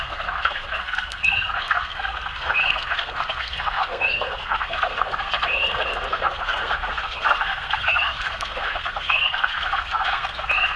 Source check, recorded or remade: remade